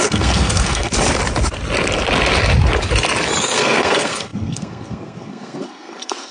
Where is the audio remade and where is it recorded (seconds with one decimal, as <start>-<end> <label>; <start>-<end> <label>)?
0.0-0.9 remade; 0.9-3.4 recorded; 3.4-6.3 remade